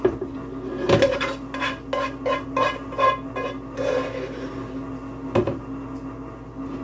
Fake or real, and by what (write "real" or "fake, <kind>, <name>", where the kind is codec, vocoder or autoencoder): real